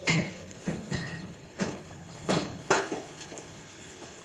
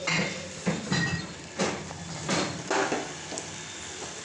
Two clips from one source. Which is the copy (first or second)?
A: first